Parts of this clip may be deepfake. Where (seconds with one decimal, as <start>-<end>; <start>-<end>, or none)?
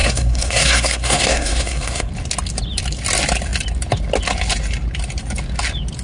0.0-2.1